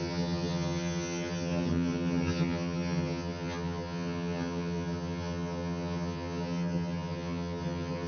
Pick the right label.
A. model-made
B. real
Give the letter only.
A